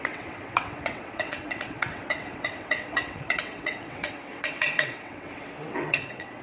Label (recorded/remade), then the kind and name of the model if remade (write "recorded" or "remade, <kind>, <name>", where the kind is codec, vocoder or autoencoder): remade, vocoder, WaveNeXt